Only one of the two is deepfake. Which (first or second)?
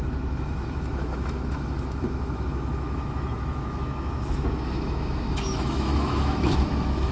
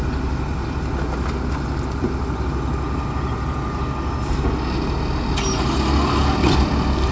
first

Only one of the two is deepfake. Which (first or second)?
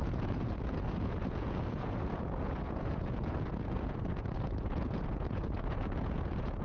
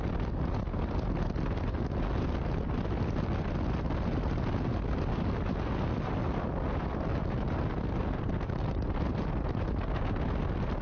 first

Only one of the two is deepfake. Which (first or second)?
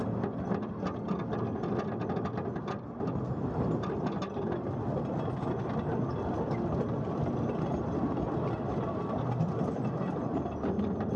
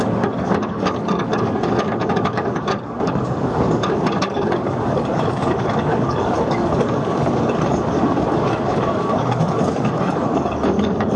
second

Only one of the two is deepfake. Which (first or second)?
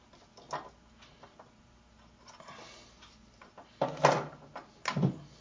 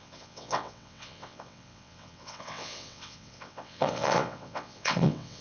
second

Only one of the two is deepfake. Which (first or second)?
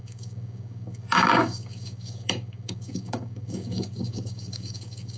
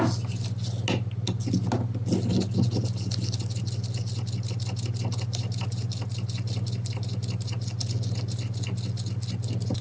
first